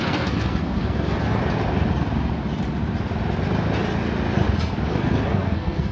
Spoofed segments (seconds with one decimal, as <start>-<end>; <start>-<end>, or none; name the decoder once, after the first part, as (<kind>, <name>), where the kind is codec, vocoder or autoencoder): 0.0-1.4 (codec, SNAC); 4.9-5.9